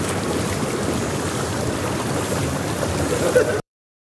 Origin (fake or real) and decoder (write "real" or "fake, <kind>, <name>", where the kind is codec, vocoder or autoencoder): fake, vocoder, BigVGAN v2